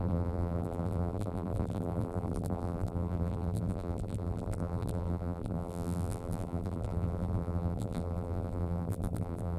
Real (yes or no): no